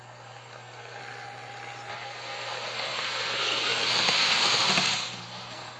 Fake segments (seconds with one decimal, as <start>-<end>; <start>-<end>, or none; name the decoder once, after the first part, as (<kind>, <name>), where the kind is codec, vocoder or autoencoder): 0.0-1.0 (codec, SNAC); 1.9-5.8